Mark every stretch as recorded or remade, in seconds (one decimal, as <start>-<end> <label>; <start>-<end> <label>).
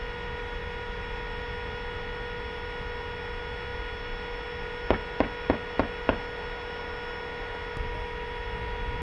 0.0-9.0 recorded